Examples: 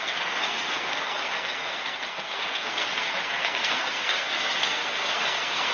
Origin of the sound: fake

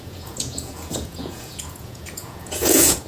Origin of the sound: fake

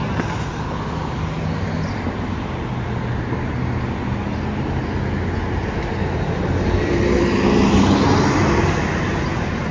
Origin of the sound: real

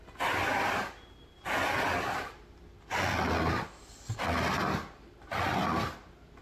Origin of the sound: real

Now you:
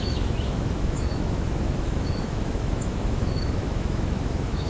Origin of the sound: fake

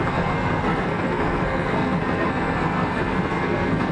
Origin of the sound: fake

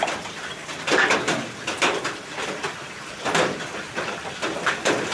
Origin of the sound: fake